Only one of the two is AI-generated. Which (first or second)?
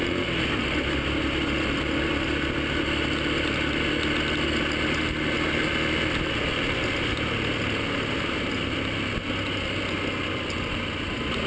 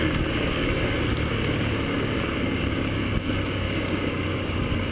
second